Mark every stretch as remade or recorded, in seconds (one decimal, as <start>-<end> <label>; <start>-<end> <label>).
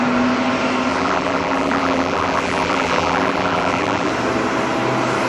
0.0-0.9 recorded; 0.9-4.1 remade; 4.1-5.3 recorded